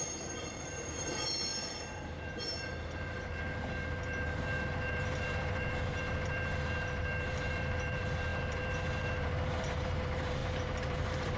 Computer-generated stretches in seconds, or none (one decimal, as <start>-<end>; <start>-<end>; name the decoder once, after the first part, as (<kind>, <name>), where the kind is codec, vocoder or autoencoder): 0.0-11.4 (vocoder, BigVGAN v2)